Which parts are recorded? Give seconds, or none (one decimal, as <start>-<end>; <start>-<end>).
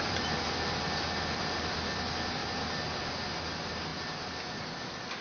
0.0-5.2